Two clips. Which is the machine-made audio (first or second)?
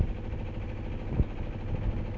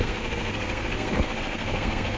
second